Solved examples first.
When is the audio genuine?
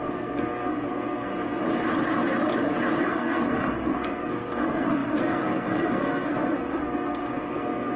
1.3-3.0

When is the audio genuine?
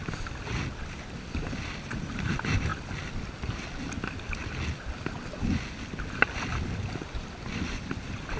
2.7-7.2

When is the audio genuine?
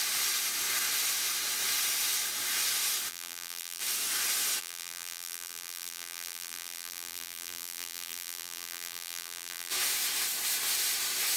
0.0-3.1; 3.8-4.6; 9.7-11.4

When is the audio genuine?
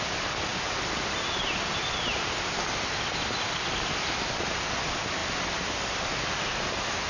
0.0-0.5; 1.0-7.1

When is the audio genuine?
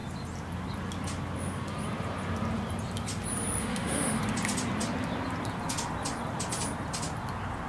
0.0-3.6; 4.2-7.7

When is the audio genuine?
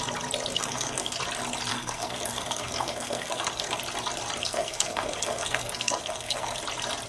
0.0-0.5; 1.2-1.7; 3.8-4.4; 6.6-7.1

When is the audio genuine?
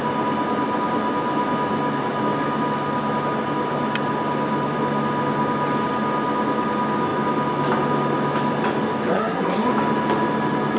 0.0-9.1; 9.7-10.8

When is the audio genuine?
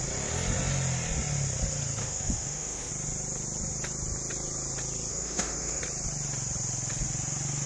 0.0-2.0; 2.9-5.1; 5.8-7.7